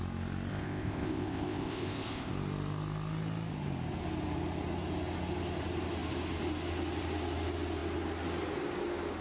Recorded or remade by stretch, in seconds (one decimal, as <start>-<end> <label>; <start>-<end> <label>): 0.0-0.5 recorded; 0.5-2.3 remade; 2.3-9.2 recorded